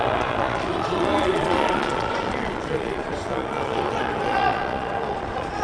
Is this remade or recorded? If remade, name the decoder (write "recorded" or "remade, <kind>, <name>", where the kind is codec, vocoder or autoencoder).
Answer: remade, vocoder, Vocos